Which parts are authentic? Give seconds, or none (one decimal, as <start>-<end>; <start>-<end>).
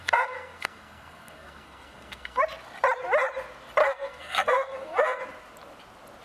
2.4-3.8; 5.2-6.2